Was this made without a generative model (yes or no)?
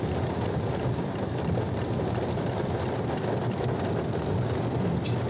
yes